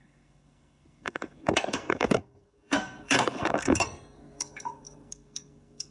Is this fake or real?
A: fake